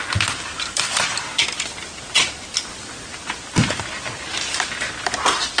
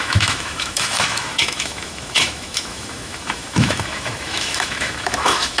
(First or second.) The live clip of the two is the first